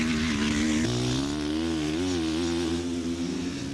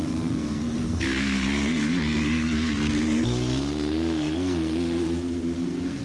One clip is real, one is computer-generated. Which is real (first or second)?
first